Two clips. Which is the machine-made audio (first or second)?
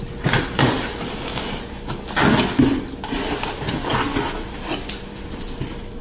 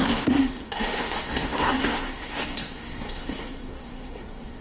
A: second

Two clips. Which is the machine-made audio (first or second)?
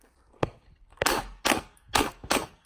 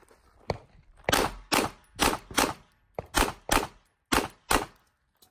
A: first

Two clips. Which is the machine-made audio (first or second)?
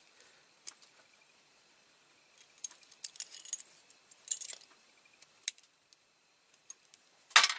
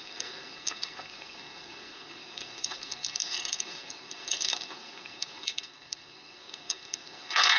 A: second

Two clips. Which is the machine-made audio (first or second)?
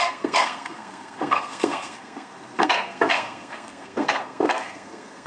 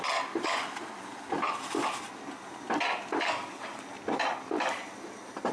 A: first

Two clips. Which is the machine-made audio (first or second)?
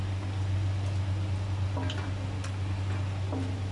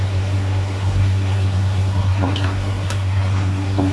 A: second